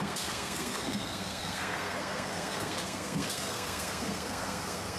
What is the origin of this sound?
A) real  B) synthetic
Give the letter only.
B